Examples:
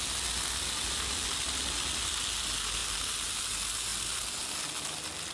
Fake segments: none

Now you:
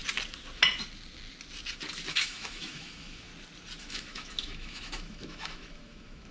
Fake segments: 2.1-3.3 (autoencoder, DAC-VAE); 3.8-6.3

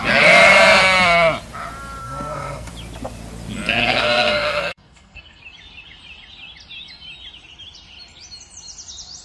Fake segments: 2.0-2.7 (codec, SNAC); 3.8-5.4

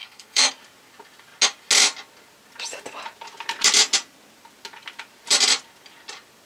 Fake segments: 0.0-0.5 (codec, SNAC)

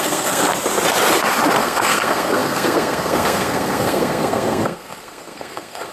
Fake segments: 0.0-0.4 (codec, SNAC); 1.6-5.9

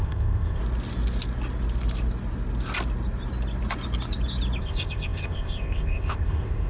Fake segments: 0.0-0.6 (codec, ZipCodec); 4.6-6.7

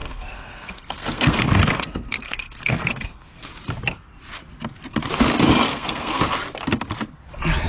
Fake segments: 0.0-3.5 (codec, SNAC); 5.7-6.2